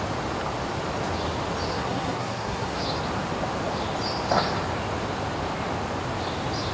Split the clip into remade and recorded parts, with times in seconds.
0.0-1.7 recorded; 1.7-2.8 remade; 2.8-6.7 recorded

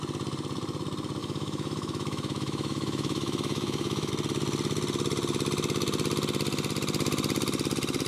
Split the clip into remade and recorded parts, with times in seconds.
0.0-1.2 recorded; 1.2-4.1 remade; 4.1-8.1 recorded